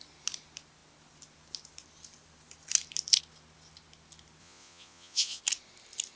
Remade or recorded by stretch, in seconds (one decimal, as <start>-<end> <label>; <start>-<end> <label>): 0.0-4.4 recorded; 4.4-5.4 remade; 5.4-6.2 recorded